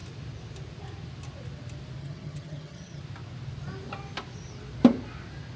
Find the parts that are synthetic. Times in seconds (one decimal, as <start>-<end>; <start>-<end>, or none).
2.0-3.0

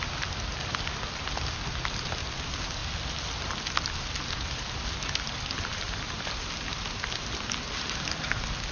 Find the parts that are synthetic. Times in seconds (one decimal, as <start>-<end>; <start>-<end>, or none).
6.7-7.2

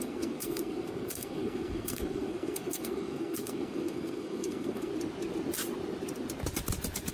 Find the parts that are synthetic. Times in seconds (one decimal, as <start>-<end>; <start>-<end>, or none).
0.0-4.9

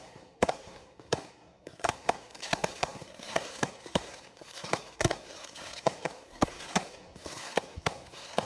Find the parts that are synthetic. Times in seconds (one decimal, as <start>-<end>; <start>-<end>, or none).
0.0-8.5

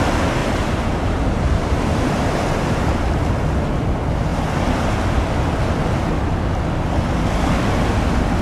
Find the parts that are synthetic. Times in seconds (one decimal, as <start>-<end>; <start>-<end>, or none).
0.4-3.1

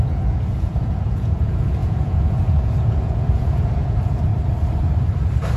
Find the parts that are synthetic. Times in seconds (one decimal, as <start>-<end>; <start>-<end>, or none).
0.0-4.3